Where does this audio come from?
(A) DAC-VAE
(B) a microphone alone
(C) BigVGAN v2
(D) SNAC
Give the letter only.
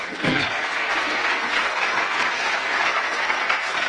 D